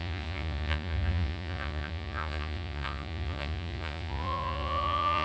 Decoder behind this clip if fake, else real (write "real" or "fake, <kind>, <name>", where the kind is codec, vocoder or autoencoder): fake, vocoder, Vocos